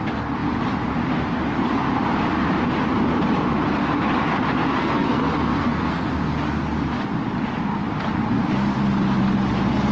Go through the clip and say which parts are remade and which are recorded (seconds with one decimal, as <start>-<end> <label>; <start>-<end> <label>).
0.0-4.8 recorded; 4.8-6.1 remade; 6.1-9.9 recorded